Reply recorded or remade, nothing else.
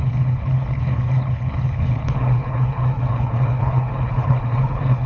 remade